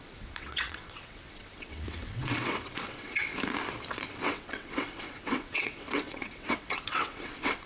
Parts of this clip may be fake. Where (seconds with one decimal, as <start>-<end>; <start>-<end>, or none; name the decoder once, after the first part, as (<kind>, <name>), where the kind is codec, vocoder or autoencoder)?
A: 0.0-3.3 (vocoder, WaveNeXt); 3.9-7.7